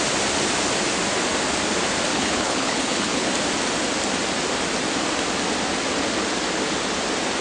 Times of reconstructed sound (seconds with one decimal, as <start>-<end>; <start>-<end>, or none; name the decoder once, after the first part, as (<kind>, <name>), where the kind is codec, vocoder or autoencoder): 2.1-3.3 (codec, HILCodec)